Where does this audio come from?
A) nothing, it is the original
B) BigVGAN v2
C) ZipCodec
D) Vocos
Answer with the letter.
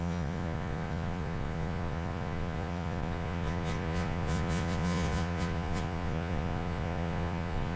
D